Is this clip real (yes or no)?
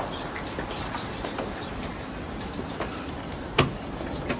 yes